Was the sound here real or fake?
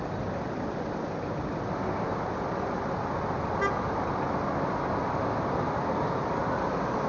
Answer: real